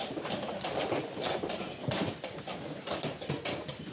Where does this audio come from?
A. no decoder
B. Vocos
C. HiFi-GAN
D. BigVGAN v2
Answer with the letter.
A